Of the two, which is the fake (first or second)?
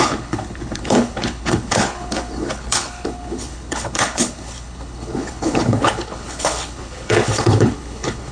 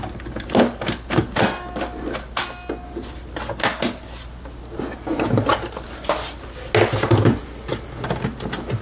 first